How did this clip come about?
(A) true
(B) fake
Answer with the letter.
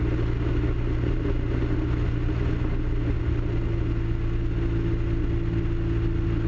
A